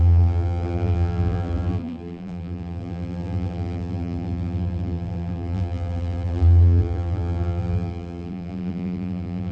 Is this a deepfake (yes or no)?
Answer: yes